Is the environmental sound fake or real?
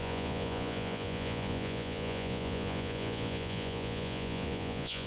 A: fake